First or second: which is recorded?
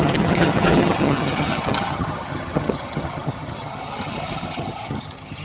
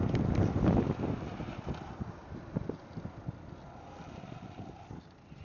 second